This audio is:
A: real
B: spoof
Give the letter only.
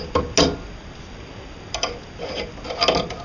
A